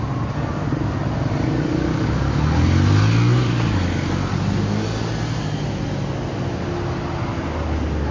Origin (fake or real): real